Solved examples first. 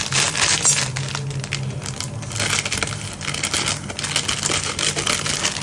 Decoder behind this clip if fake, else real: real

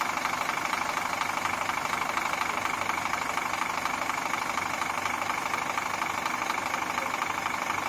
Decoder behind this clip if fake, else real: real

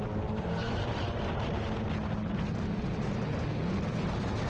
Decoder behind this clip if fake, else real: real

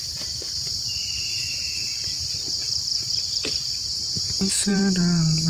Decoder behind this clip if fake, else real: fake, vocoder, BigVGAN v2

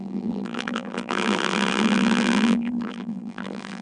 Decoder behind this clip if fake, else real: fake, vocoder, BigVGAN v2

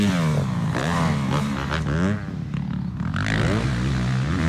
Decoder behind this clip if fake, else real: real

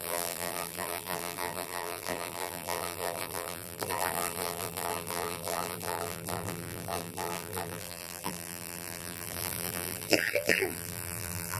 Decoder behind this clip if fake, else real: fake, vocoder, BigVGAN v2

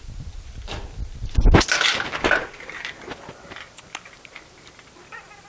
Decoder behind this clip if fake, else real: real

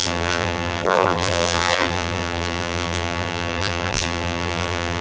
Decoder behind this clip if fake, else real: fake, vocoder, BigVGAN v2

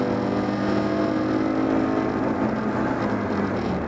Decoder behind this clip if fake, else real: real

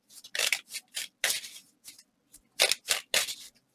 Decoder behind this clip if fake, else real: real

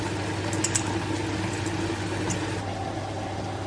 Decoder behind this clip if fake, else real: real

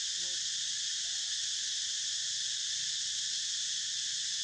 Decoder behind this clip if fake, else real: real